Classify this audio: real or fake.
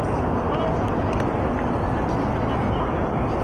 real